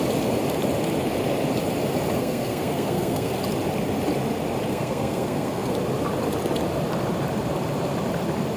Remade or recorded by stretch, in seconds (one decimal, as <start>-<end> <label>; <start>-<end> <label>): 0.0-2.2 recorded; 2.2-3.3 remade; 3.3-4.7 recorded; 4.7-5.7 remade; 5.7-8.6 recorded